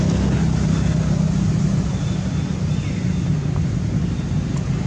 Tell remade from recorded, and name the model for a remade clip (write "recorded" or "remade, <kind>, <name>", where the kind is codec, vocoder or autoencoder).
recorded